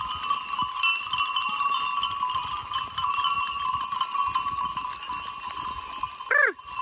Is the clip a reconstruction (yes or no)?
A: no